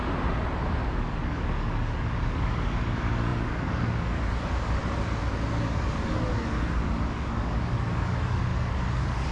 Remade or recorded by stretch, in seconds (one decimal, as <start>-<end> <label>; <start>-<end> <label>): 0.0-0.9 recorded; 0.9-4.8 remade; 4.8-5.6 recorded; 5.6-9.3 remade